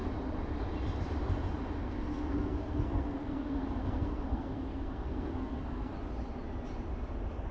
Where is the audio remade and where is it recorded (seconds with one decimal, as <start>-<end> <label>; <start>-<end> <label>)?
0.0-1.8 recorded; 1.8-5.9 remade; 5.9-7.5 recorded